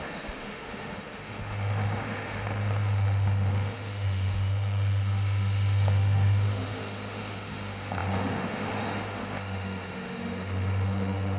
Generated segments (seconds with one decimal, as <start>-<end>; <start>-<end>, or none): 0.0-11.4